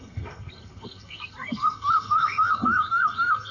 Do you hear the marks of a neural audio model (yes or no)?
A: yes